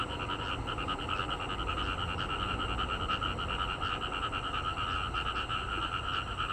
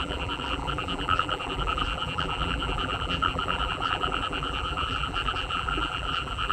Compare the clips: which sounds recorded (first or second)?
first